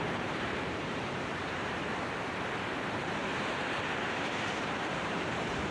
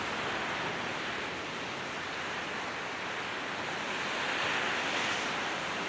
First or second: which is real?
second